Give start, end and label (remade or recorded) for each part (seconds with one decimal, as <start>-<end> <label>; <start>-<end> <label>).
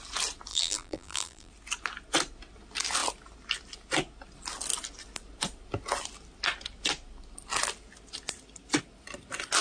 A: 0.0-0.5 recorded; 0.5-1.5 remade; 1.5-9.6 recorded